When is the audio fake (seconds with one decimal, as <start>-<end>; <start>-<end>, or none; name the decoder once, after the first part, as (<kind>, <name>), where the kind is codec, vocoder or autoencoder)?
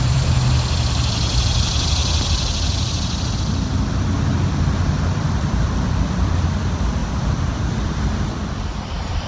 0.0-9.3 (vocoder, BigVGAN v2)